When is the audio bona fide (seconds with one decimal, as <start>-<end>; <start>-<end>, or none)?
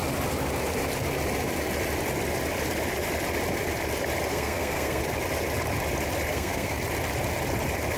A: 0.0-4.3; 5.0-6.3; 6.8-8.0